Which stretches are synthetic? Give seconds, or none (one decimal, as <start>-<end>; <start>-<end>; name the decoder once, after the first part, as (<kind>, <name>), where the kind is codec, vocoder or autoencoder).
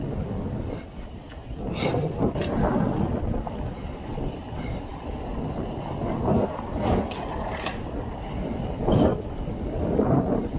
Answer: none